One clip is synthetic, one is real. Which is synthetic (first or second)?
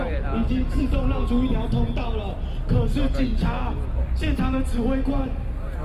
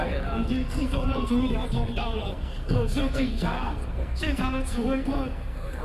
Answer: second